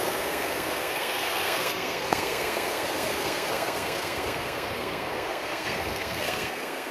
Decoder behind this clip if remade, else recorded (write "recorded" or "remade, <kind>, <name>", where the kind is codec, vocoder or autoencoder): remade, codec, SNAC